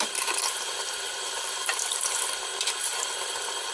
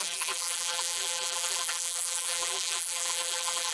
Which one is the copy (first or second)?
second